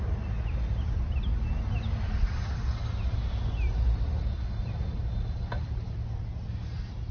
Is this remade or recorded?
recorded